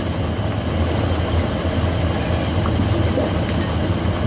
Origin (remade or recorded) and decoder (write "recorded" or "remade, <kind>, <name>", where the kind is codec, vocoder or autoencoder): recorded